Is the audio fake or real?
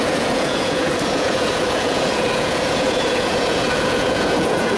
fake